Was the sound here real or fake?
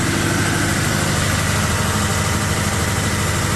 real